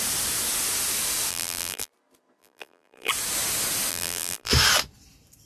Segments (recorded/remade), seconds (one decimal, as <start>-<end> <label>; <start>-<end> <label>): 0.0-1.3 recorded; 1.3-1.9 remade; 1.9-2.4 recorded; 2.4-3.1 remade; 3.1-3.9 recorded; 3.9-4.5 remade; 4.5-5.5 recorded